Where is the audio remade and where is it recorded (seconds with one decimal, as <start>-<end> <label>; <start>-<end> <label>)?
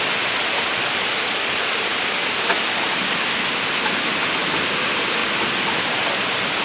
0.0-6.6 recorded